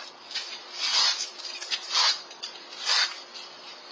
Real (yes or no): yes